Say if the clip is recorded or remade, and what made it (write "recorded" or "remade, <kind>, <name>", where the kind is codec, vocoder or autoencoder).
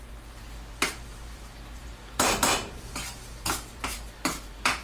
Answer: remade, vocoder, BigVGAN v2